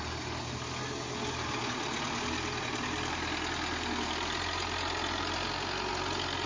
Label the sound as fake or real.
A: real